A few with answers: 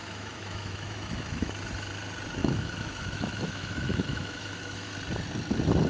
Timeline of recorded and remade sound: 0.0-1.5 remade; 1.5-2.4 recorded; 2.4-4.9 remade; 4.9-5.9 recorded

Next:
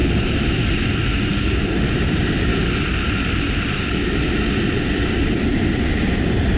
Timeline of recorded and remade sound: 0.0-0.5 remade; 0.5-1.3 recorded; 1.3-2.2 remade; 2.2-6.6 recorded

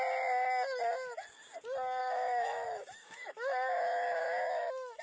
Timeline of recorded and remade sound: 0.0-2.0 recorded; 2.0-5.0 remade

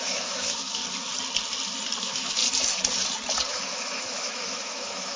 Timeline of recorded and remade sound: 0.0-0.8 remade; 0.8-2.0 recorded; 2.0-2.4 remade; 2.4-3.5 recorded; 3.5-5.2 remade

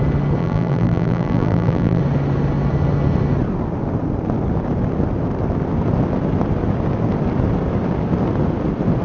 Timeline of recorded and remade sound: 0.0-0.4 recorded; 0.4-2.0 remade; 2.0-9.0 recorded

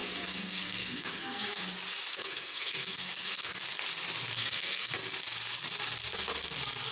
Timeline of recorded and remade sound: 0.0-1.6 remade; 1.6-2.1 recorded; 2.1-3.6 remade; 3.6-4.4 recorded; 4.4-4.9 remade; 4.9-6.9 recorded

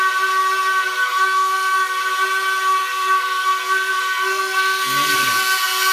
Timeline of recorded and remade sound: 0.0-1.0 recorded; 1.0-2.0 remade; 2.0-2.8 recorded; 2.8-5.3 remade; 5.3-5.9 recorded